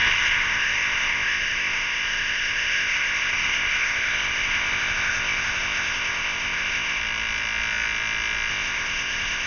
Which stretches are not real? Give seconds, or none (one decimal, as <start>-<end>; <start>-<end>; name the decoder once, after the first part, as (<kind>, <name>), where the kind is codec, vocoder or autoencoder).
0.0-7.0 (codec, ZipCodec); 8.5-9.5